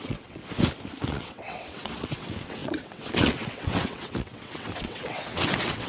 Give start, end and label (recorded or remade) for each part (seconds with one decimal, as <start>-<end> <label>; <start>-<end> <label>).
0.0-0.4 remade; 0.4-1.0 recorded; 1.0-5.9 remade